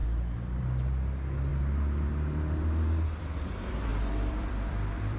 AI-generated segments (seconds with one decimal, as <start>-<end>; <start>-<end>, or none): 3.9-5.2